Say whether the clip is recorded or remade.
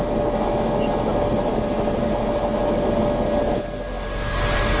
recorded